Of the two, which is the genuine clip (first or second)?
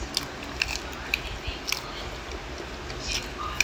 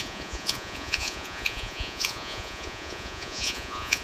first